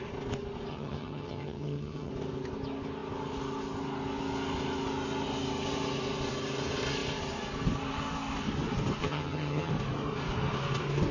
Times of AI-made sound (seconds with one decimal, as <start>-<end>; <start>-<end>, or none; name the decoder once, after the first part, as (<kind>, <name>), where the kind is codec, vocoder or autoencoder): 0.7-2.1 (vocoder, HiFi-GAN); 9.0-9.7